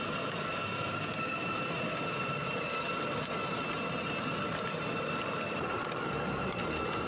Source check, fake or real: real